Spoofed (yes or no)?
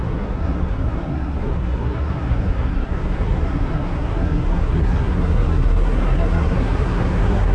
yes